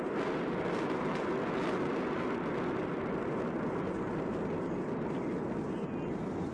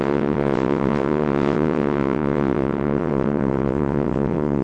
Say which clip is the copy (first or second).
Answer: second